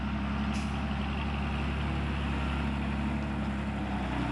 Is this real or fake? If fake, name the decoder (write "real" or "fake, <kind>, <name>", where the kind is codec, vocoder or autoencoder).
real